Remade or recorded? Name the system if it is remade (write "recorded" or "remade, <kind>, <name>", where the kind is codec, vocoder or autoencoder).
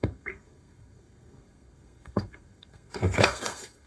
remade, codec, SNAC